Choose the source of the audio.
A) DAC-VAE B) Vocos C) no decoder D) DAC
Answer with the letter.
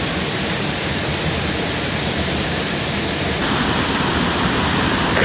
C